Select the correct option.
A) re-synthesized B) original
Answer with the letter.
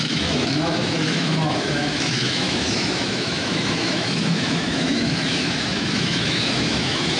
A